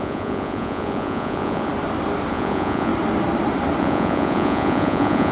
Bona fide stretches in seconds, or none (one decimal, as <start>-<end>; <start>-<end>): 1.7-2.3; 2.9-3.8